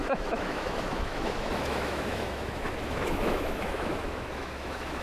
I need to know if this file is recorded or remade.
remade